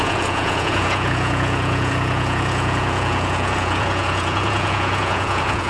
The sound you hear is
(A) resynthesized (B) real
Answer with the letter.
A